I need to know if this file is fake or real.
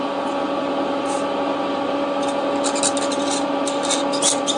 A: real